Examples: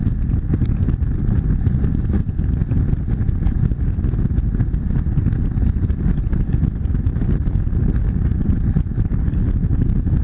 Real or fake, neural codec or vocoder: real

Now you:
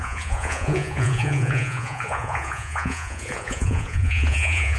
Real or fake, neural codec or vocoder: fake, vocoder, Vocos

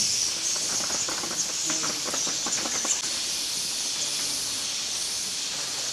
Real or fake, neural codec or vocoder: real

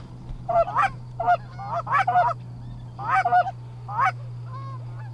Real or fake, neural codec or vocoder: real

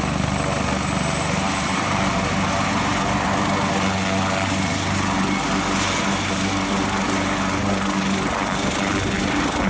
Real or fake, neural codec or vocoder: real